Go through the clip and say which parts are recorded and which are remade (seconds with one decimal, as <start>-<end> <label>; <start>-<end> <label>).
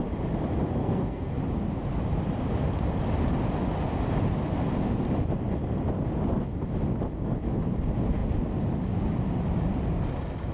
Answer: 0.0-0.8 recorded; 0.8-1.4 remade; 1.4-10.5 recorded